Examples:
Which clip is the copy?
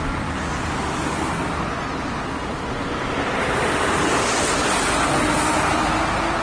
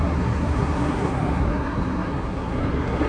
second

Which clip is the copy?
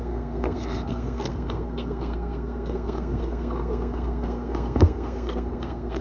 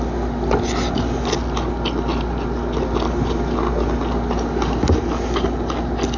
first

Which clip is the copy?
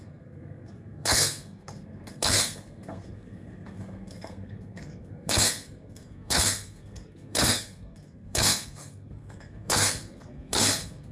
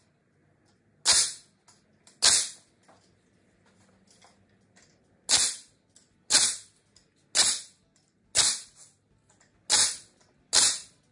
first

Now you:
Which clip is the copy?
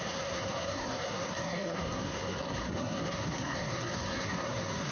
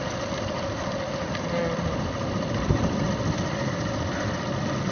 first